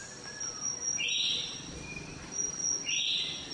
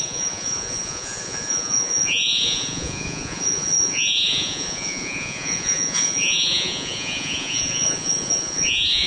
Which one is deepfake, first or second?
second